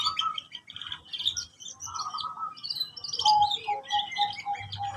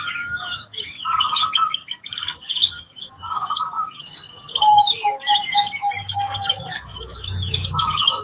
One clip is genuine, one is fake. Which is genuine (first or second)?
first